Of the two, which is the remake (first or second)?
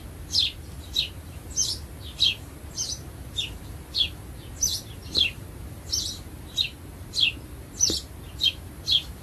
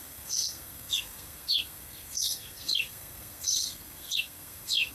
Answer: second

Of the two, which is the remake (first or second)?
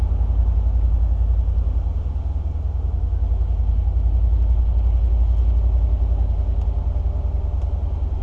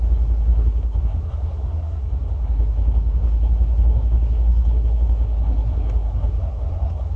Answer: second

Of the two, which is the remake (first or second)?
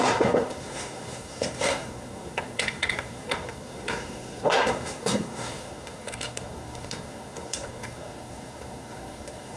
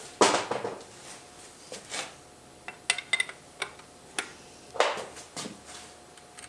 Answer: first